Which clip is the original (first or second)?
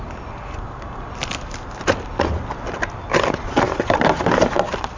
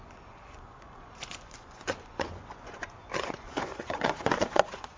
first